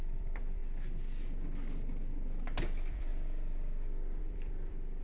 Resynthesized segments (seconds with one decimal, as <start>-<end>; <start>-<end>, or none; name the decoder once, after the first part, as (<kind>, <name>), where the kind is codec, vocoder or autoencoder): 0.0-0.6 (vocoder, BigVGAN v2); 2.6-3.1; 4.2-5.0

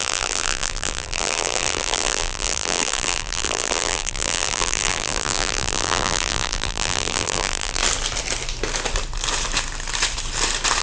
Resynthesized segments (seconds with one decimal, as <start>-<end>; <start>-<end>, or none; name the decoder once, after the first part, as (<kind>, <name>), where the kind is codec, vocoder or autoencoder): 0.0-7.8 (vocoder, BigVGAN v2)

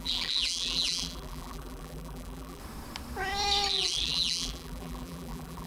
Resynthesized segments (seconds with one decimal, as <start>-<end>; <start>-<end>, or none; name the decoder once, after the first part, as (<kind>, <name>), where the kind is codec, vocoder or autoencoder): 0.0-2.6 (vocoder, BigVGAN v2); 3.7-5.7

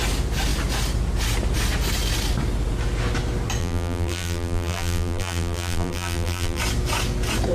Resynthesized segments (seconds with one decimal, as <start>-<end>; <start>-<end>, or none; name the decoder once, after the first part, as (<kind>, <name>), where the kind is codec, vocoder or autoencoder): 3.6-6.6 (vocoder, BigVGAN v2)

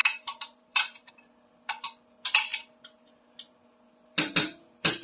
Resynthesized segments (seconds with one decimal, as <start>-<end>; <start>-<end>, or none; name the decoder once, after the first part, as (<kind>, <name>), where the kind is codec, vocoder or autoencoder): 0.0-1.1 (vocoder, BigVGAN v2)

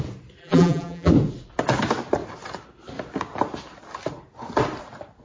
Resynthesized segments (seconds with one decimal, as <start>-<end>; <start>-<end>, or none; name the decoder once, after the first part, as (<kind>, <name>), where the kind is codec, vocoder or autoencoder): 0.4-1.1 (vocoder, BigVGAN v2)

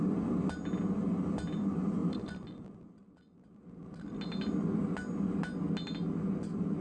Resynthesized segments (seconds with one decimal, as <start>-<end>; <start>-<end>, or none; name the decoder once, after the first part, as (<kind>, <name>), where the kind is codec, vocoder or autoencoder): none